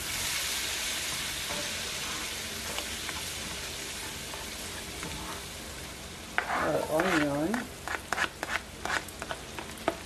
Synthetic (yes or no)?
no